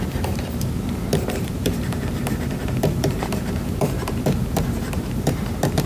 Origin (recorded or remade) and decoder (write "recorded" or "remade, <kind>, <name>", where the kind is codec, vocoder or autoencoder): remade, vocoder, BigVGAN v2